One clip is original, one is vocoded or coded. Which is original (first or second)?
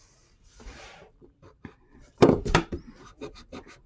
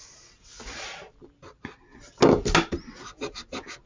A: second